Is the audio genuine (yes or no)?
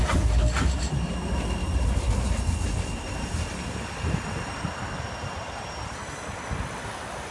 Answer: yes